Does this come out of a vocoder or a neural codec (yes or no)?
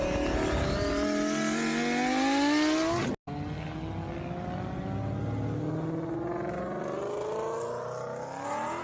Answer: no